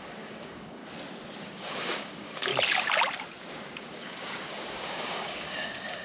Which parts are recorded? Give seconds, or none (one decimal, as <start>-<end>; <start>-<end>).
0.8-1.4; 2.5-3.8